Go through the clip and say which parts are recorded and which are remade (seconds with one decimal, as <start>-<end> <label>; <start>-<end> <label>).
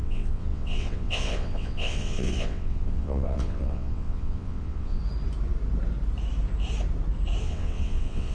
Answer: 0.0-5.0 remade; 5.0-7.4 recorded; 7.4-8.3 remade